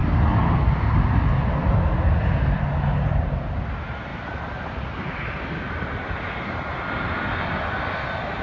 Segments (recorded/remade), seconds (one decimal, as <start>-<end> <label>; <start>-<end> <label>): 0.0-8.4 recorded